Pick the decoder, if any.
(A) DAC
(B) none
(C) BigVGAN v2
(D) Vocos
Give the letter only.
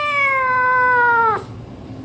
B